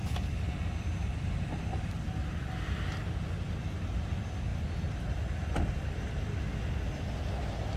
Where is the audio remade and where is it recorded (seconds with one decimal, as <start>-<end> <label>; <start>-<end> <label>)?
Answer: 0.0-7.8 recorded